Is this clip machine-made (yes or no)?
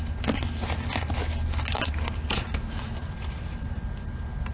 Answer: no